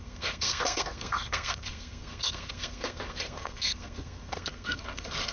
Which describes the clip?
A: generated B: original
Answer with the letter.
A